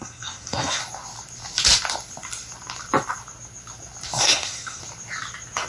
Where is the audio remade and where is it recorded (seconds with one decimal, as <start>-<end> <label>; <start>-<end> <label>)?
0.0-0.8 remade; 0.8-4.2 recorded; 4.2-4.8 remade; 4.8-5.7 recorded

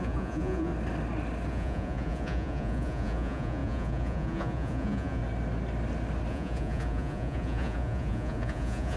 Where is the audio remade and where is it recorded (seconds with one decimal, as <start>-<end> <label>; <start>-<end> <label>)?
0.0-0.7 remade; 0.7-1.5 recorded; 1.5-5.2 remade; 5.2-6.3 recorded; 6.3-9.0 remade

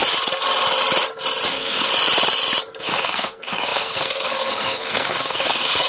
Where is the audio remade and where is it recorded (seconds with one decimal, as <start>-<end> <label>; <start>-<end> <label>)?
0.0-1.5 recorded; 1.5-1.9 remade; 1.9-2.8 recorded; 2.8-5.9 remade

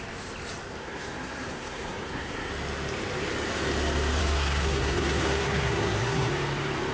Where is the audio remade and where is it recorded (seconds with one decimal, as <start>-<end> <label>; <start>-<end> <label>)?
0.0-0.8 recorded; 0.8-2.5 remade; 2.5-4.2 recorded; 4.2-6.3 remade; 6.3-6.9 recorded

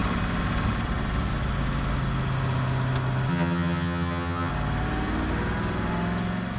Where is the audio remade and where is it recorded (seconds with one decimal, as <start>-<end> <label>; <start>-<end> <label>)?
0.0-3.3 recorded; 3.3-4.5 remade; 4.5-6.6 recorded

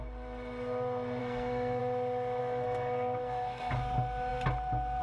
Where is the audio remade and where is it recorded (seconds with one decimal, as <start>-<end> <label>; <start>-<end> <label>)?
0.0-1.2 recorded; 1.2-1.8 remade; 1.8-2.4 recorded; 2.4-3.7 remade; 3.7-5.0 recorded

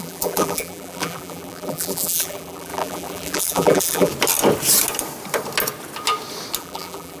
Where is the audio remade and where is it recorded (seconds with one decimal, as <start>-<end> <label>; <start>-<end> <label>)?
0.0-4.1 remade; 4.1-6.6 recorded; 6.6-7.2 remade

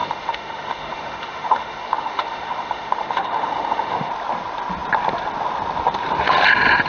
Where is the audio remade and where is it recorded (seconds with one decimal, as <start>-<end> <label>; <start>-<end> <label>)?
0.0-4.1 remade; 4.1-6.9 recorded